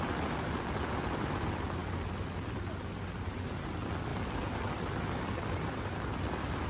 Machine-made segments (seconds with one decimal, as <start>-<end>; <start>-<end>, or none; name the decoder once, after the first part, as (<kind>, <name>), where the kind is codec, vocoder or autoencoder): none

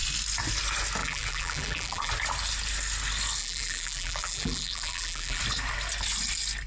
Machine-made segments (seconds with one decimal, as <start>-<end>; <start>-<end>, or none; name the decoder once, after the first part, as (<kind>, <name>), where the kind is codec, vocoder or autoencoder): 1.0-2.1 (vocoder, BigVGAN v2); 3.4-5.4